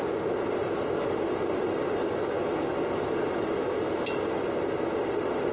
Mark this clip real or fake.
real